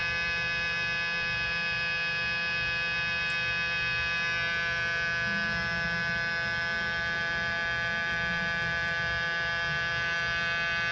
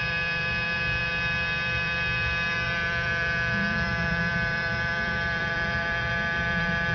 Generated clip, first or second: second